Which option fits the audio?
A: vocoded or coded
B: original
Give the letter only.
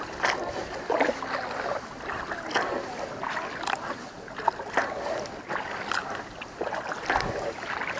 B